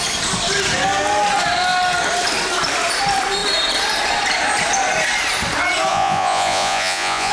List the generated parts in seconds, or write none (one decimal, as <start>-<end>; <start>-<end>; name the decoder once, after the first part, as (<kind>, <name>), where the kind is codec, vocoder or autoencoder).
5.9-7.3 (vocoder, Vocos)

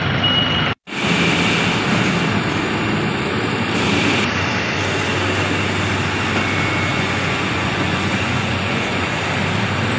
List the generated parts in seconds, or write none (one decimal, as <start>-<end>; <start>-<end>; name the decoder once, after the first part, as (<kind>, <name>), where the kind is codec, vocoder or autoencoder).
6.9-9.2 (vocoder, Vocos)

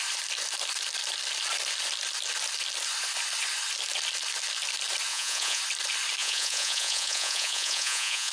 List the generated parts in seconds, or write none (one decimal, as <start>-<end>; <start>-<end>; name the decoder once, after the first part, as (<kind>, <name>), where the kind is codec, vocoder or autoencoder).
5.1-5.6 (vocoder, Vocos); 6.2-8.3

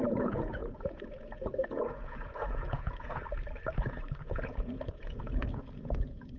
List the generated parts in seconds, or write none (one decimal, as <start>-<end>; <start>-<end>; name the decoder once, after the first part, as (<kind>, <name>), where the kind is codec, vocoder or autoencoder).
0.0-3.2 (vocoder, Vocos); 3.8-6.4

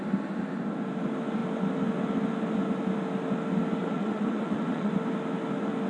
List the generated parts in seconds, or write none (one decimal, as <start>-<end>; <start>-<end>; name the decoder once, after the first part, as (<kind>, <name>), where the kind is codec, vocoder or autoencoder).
3.8-4.9 (vocoder, Vocos)

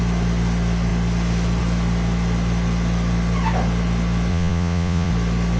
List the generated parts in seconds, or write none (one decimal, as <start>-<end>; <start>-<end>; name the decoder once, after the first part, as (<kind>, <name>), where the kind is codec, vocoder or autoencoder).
4.3-5.1 (vocoder, Vocos)